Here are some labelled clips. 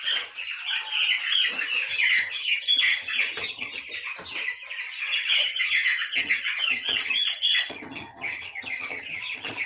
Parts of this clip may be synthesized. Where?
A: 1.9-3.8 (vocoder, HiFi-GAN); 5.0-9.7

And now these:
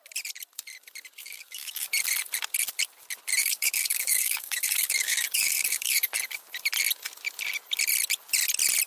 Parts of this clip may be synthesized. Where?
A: 1.2-1.9 (codec, DAC); 3.4-6.1